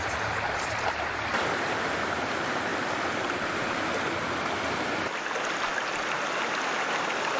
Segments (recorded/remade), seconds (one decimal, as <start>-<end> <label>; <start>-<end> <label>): 0.0-7.4 recorded